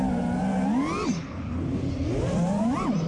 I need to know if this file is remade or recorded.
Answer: recorded